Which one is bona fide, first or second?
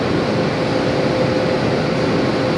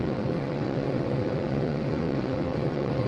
first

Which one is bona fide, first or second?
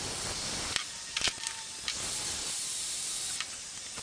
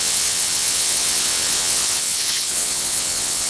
first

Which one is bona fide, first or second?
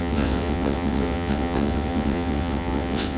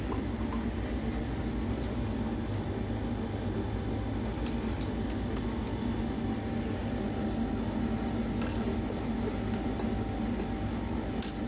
second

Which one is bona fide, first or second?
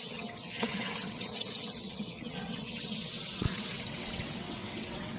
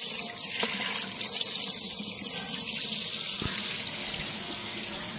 second